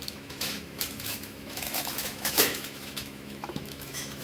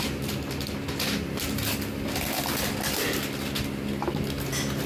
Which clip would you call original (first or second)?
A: second